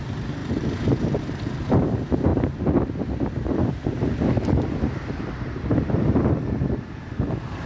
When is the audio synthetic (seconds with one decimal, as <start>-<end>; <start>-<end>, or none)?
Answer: 0.0-2.3; 5.6-7.7